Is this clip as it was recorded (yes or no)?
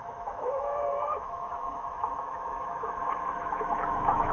no